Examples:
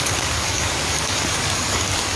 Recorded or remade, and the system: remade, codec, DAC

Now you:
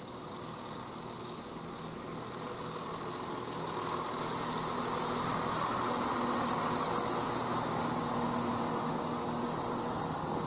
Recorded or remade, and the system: recorded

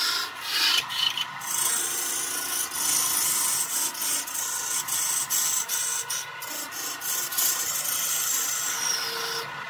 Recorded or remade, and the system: recorded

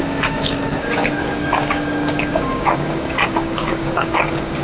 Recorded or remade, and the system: remade, codec, DAC